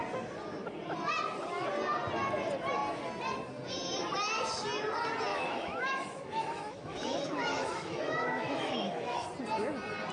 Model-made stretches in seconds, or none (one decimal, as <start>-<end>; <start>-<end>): 5.3-9.3